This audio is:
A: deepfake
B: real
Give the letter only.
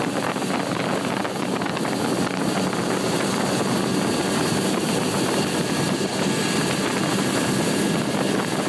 B